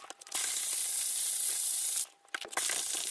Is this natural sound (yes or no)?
yes